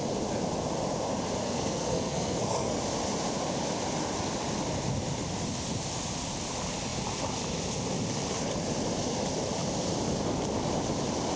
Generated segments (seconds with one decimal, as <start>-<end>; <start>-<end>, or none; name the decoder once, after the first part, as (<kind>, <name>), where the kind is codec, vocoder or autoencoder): 1.4-2.8 (codec, SNAC)